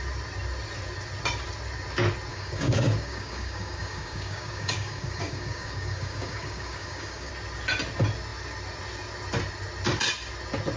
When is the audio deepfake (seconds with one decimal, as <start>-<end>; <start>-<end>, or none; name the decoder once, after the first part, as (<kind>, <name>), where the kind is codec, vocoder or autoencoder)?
2.3-7.3 (codec, DAC)